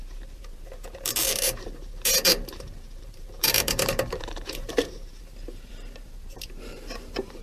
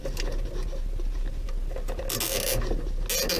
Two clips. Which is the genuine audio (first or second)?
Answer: second